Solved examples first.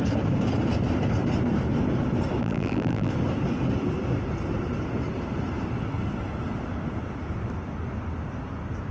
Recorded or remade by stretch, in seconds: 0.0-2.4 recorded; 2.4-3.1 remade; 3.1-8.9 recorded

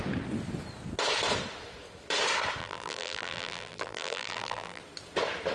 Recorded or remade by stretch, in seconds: 0.0-2.6 recorded; 2.6-4.8 remade; 4.8-5.5 recorded

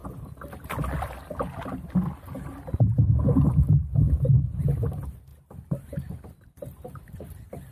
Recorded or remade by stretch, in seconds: 0.0-4.6 recorded; 4.6-5.3 remade; 5.3-6.4 recorded; 6.4-7.7 remade

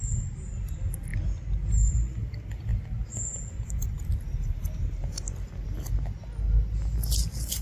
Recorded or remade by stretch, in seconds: 0.0-7.6 recorded

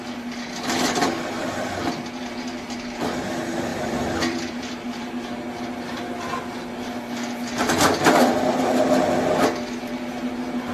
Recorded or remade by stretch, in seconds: 0.0-3.7 recorded; 3.7-5.1 remade; 5.1-10.7 recorded